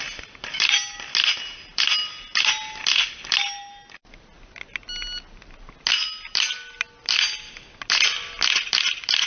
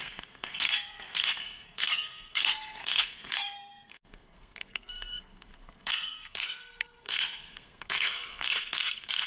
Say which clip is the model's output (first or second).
second